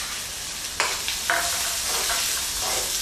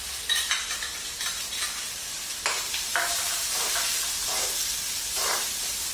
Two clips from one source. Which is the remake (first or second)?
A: second